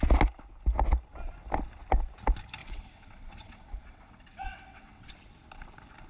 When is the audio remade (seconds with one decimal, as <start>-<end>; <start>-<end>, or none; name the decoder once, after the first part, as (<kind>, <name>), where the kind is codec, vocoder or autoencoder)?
2.6-5.1 (vocoder, WaveNeXt)